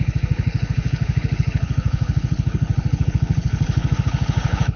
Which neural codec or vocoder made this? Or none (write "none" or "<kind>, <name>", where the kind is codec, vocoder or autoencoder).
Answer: codec, HILCodec